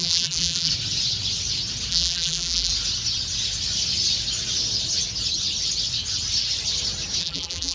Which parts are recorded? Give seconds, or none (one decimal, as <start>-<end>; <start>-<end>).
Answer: 0.7-1.9; 2.7-7.2